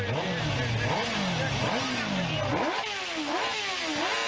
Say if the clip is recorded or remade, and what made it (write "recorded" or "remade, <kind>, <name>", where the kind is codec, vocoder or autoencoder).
recorded